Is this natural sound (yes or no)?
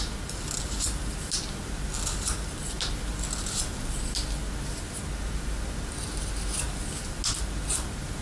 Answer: yes